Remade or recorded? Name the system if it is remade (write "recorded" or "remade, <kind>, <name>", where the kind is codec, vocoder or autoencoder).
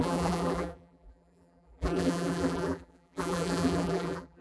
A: remade, vocoder, BigVGAN v2